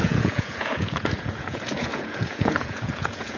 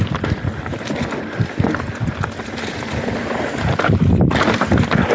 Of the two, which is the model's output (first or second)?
first